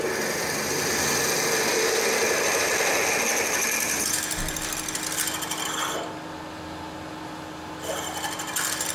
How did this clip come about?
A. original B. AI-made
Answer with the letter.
A